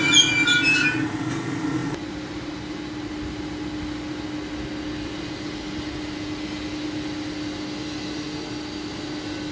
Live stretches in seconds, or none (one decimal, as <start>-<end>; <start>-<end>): 0.0-9.5